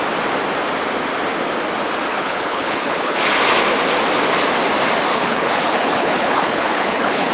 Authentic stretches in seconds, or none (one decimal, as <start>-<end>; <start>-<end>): 0.0-2.1; 3.2-5.1